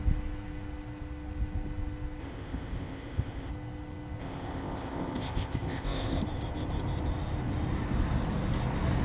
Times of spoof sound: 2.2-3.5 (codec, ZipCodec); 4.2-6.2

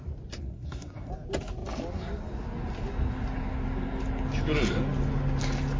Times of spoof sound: 0.4-1.1 (codec, SNAC)

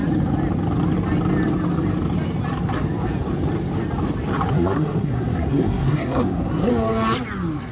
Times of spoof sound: 4.5-6.7 (codec, SNAC)

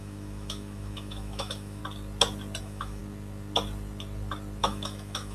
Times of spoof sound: 0.0-1.8 (autoencoder, DAC-VAE); 2.6-3.0; 4.6-5.3

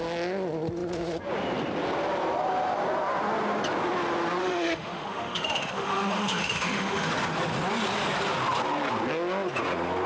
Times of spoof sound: 4.4-7.1 (autoencoder, DAC-VAE)